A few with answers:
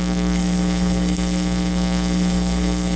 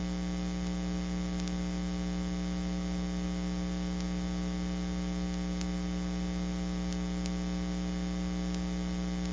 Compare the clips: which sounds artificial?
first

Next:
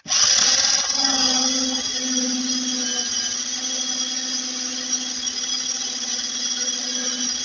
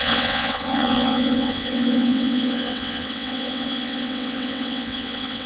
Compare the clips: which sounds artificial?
second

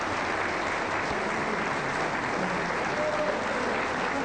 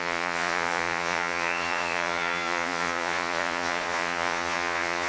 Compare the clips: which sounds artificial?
second